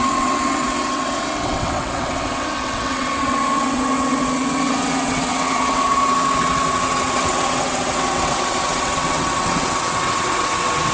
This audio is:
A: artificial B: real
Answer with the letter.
A